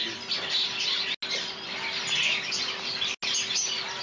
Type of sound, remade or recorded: recorded